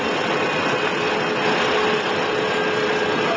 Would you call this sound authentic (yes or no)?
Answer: yes